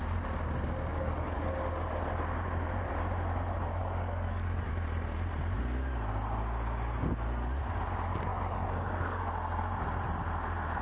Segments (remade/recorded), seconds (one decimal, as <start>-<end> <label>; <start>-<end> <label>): 0.0-0.9 recorded; 0.9-1.4 remade; 1.4-3.8 recorded; 3.8-4.7 remade; 4.7-8.3 recorded; 8.3-9.3 remade; 9.3-10.8 recorded